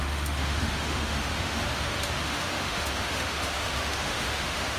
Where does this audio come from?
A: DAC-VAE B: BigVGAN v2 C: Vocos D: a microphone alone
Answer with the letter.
A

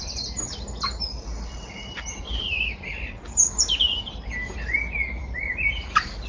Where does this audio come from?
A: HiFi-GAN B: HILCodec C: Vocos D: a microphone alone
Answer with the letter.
D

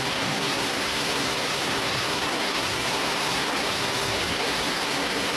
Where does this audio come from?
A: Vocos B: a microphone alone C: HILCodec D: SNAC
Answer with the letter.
D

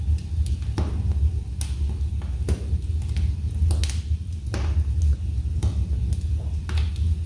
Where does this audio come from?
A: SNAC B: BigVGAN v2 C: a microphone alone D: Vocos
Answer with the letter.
C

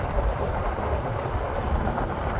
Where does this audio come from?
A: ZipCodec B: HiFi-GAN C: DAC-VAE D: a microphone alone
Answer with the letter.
D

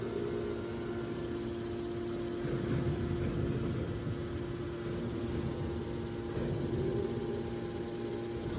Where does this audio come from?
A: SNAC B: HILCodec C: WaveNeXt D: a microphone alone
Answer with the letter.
D